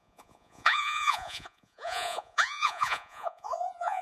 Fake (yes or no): yes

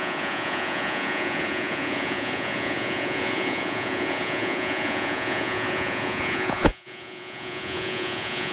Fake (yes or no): yes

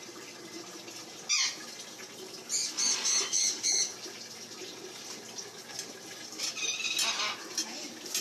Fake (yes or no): no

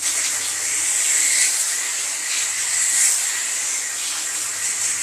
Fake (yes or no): no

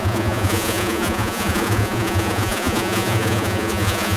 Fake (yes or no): yes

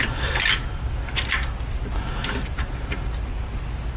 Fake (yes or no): no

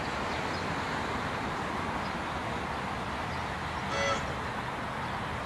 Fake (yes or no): no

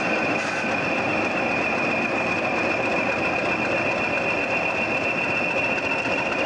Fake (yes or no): no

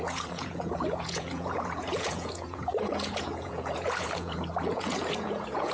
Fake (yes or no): yes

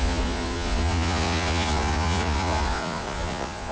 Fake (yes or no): yes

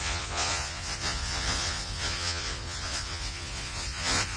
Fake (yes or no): yes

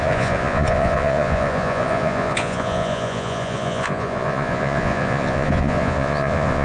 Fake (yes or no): yes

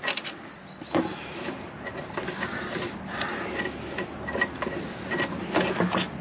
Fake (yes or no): no